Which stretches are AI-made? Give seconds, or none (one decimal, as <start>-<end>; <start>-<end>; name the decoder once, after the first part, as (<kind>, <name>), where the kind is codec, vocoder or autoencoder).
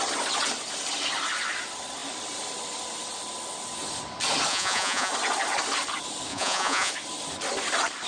4.5-5.1 (vocoder, Vocos); 6.3-6.9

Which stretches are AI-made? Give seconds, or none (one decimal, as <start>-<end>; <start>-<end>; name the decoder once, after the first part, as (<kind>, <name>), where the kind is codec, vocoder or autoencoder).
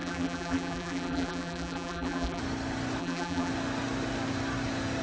0.0-2.4 (vocoder, BigVGAN v2); 3.0-3.5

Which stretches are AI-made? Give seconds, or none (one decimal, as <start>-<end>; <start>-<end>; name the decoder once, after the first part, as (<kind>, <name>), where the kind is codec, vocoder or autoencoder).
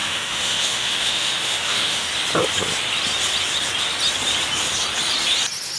0.0-2.1 (autoencoder, DAC-VAE)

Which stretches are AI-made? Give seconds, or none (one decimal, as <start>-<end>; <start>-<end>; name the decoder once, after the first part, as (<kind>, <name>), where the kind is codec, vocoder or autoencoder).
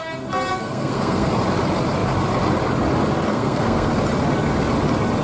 0.5-1.3 (codec, SNAC); 3.3-3.9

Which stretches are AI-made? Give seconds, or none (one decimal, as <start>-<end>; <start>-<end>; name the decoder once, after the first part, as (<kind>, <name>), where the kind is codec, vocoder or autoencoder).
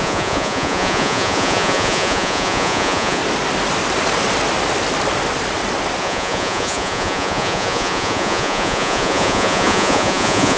0.0-3.2 (vocoder, Vocos); 6.0-10.6